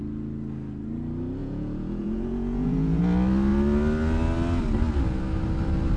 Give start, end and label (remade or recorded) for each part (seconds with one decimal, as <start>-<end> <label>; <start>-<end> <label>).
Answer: 0.0-1.4 recorded; 1.4-3.0 remade; 3.0-6.0 recorded